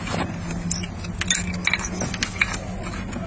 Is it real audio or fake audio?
real